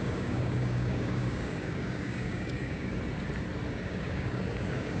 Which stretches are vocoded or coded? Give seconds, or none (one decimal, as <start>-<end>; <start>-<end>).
0.0-2.9; 3.7-5.0